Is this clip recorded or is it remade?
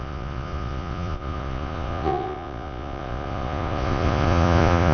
remade